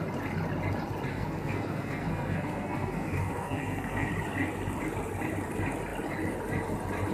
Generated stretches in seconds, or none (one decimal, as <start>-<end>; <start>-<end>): 1.1-4.1